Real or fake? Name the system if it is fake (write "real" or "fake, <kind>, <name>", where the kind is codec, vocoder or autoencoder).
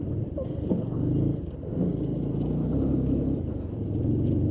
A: real